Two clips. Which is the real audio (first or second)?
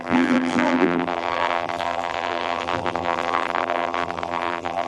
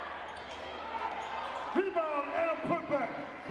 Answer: second